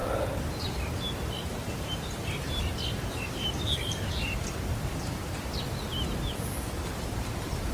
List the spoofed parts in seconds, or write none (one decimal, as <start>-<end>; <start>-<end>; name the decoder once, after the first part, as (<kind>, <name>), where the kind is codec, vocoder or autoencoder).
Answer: none